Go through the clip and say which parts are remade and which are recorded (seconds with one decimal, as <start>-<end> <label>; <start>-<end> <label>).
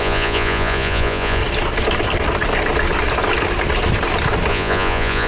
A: 0.0-1.4 remade; 1.4-4.5 recorded; 4.5-5.3 remade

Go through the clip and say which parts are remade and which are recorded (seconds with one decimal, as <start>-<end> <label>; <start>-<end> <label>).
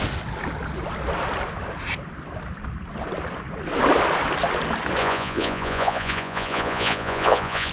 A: 0.0-5.0 recorded; 5.0-7.7 remade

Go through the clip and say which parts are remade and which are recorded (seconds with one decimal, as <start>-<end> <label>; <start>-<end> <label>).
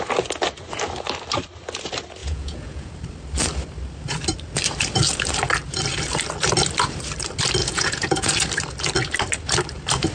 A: 0.0-2.2 recorded; 2.2-2.9 remade; 2.9-7.6 recorded; 7.6-8.3 remade; 8.3-10.1 recorded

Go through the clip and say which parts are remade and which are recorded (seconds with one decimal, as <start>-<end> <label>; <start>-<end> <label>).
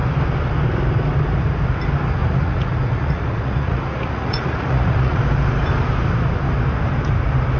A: 0.0-2.2 recorded; 2.2-5.2 remade; 5.2-7.6 recorded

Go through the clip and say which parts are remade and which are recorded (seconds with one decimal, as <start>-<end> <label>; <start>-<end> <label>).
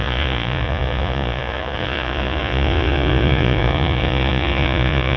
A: 0.0-5.2 remade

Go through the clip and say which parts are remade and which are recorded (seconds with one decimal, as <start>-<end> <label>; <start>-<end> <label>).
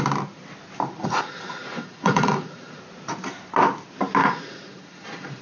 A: 0.0-1.0 recorded; 1.0-2.8 remade; 2.8-4.2 recorded; 4.2-5.4 remade